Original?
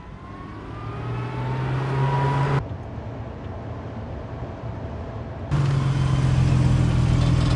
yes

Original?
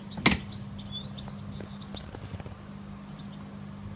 yes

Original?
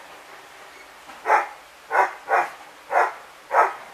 yes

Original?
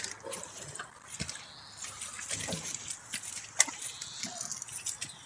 yes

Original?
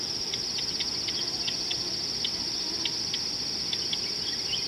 yes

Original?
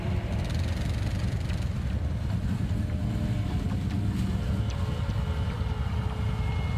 yes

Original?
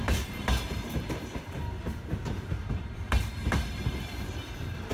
no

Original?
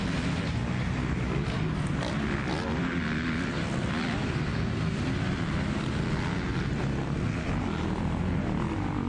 yes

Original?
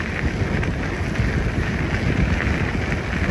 yes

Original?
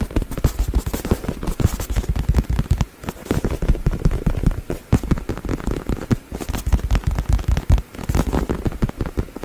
yes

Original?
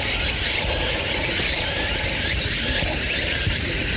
no